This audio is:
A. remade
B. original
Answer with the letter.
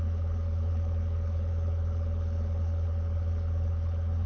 A